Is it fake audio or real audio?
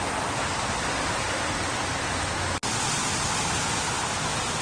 real